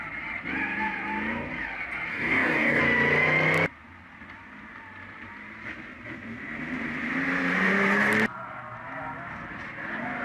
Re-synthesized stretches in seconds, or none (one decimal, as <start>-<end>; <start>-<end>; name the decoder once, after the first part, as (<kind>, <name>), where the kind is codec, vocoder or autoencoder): 2.1-2.8 (codec, DAC)